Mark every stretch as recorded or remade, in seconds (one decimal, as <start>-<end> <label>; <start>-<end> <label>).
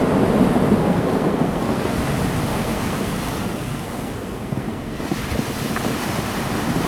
0.0-0.8 recorded; 0.8-2.0 remade; 2.0-2.5 recorded; 2.5-5.0 remade; 5.0-6.9 recorded